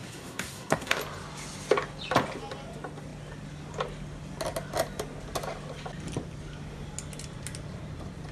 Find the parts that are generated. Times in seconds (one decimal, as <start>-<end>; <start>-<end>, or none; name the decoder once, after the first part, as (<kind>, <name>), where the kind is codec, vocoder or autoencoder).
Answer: 0.0-1.0 (codec, SNAC)